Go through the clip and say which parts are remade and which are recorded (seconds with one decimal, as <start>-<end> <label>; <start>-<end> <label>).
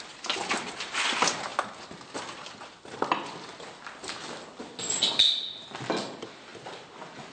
0.0-7.3 recorded